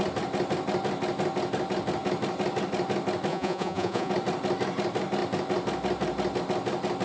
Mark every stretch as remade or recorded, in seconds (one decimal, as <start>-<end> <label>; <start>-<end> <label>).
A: 0.0-3.3 recorded; 3.3-4.1 remade; 4.1-7.0 recorded